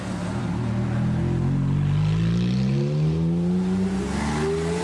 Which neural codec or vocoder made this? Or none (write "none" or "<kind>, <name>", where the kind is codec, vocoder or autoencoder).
none